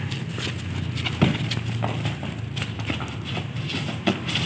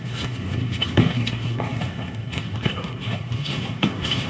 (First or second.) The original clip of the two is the first